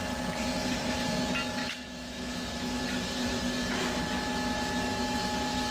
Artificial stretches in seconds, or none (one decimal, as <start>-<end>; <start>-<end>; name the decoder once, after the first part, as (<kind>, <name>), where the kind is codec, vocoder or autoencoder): 1.6-2.8 (autoencoder, DAC-VAE)